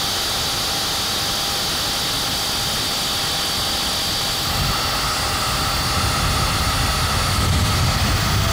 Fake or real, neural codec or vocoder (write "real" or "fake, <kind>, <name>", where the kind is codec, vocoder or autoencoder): real